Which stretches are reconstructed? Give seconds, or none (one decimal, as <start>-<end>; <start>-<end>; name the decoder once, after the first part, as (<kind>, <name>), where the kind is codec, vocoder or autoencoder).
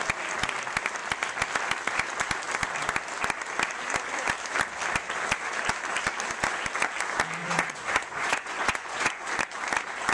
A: 7.4-9.3 (vocoder, Vocos)